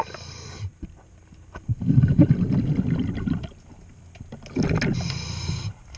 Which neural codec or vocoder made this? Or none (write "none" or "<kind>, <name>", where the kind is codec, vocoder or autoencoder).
none